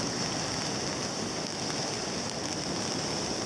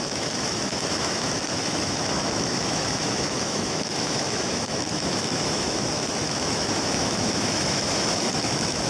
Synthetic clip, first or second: second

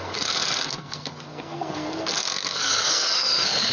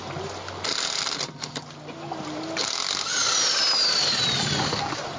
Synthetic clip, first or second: first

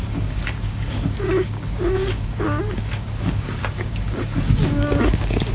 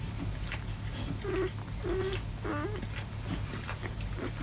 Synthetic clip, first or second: first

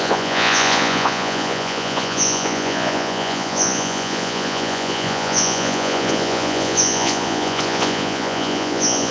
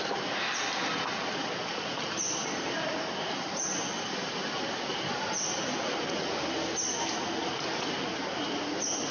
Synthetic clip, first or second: first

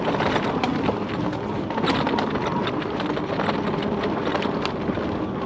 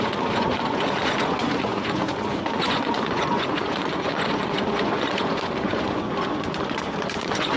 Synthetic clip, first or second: second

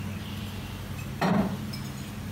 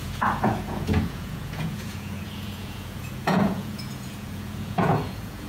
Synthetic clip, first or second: second